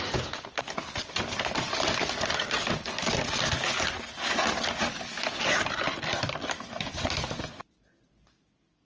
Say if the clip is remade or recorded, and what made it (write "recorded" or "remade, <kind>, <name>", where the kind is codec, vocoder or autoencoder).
recorded